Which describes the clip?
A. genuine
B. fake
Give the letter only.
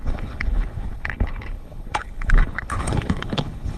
B